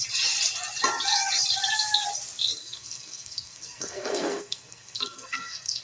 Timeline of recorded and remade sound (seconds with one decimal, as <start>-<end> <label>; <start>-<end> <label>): 0.0-2.6 recorded; 2.6-5.8 remade